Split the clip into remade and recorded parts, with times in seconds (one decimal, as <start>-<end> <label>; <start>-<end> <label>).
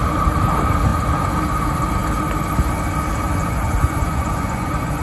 0.0-3.4 recorded; 3.4-5.0 remade